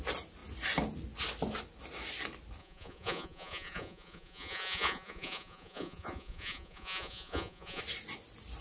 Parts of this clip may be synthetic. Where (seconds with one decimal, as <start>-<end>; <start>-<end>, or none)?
2.6-7.8